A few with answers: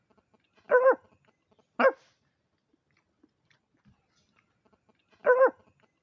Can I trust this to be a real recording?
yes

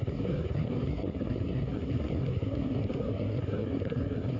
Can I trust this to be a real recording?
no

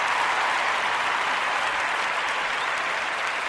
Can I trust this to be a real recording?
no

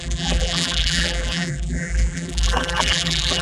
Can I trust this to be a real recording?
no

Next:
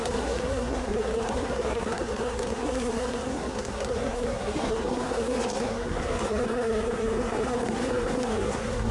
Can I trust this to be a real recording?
no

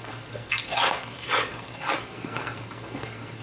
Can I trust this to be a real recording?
no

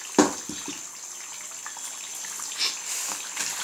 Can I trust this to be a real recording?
yes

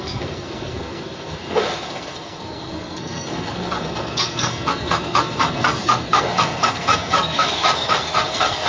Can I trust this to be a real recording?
no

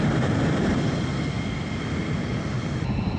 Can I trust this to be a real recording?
no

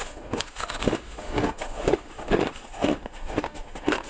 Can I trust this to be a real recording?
no